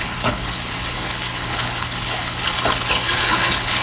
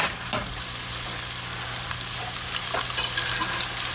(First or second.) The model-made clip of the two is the first